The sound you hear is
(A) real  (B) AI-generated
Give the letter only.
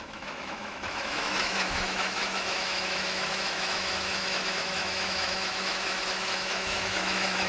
B